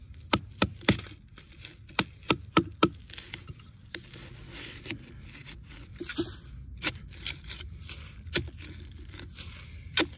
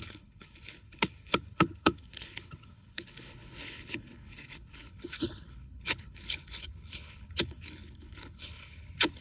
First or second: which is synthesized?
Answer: second